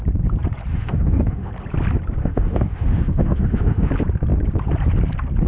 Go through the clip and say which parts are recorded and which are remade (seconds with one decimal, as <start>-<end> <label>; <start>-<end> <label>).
0.0-0.7 recorded; 0.7-1.5 remade; 1.5-2.2 recorded; 2.2-3.9 remade; 3.9-5.5 recorded